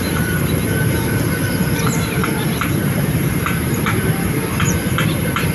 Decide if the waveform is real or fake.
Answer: fake